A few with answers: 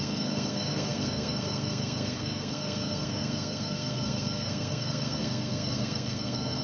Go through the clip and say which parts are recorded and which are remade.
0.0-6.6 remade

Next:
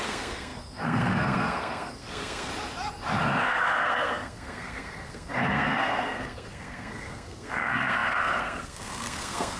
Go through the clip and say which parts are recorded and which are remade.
0.0-2.5 remade; 2.5-3.4 recorded; 3.4-9.6 remade

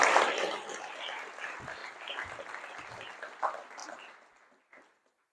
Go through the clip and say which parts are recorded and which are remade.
0.0-5.3 recorded

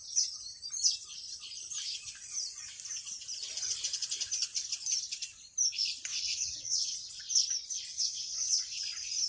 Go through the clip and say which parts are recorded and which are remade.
0.0-6.1 recorded; 6.1-7.2 remade; 7.2-7.9 recorded; 7.9-8.8 remade; 8.8-9.3 recorded

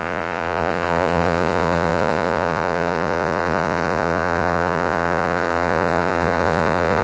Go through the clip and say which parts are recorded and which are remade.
0.0-7.0 remade

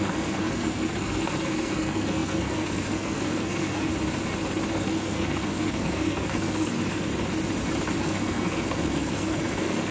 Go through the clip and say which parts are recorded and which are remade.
0.0-3.9 remade; 3.9-4.7 recorded; 4.7-7.1 remade; 7.1-8.0 recorded; 8.0-9.9 remade

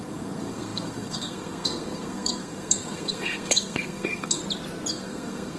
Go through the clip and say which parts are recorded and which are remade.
0.0-4.4 remade; 4.4-4.9 recorded; 4.9-5.6 remade

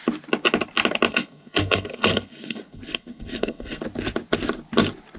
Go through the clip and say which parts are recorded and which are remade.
0.0-1.1 recorded; 1.1-3.8 remade; 3.8-5.2 recorded